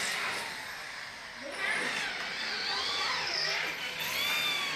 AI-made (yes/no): no